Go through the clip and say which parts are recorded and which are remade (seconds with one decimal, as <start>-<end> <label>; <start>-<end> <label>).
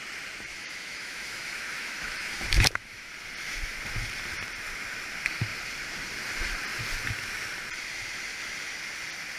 0.0-0.5 recorded; 0.5-3.1 remade; 3.1-9.4 recorded